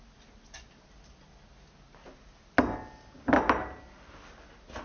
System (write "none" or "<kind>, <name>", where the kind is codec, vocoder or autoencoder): none